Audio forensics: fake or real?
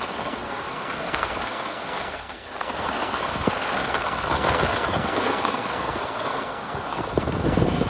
fake